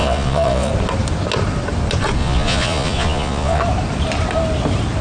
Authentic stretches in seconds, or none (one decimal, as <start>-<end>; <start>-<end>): 0.7-2.2; 3.6-5.0